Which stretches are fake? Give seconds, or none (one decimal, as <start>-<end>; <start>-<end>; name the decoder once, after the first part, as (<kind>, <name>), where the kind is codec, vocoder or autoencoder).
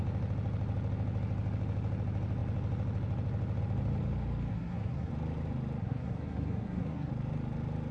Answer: 4.5-5.1 (codec, SNAC); 5.8-7.1